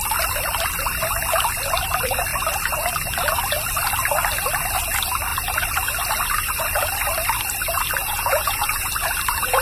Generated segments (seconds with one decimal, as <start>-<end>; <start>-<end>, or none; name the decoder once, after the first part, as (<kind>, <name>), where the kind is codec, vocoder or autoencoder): 8.0-8.9 (vocoder, Vocos)